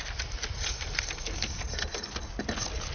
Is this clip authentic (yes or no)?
yes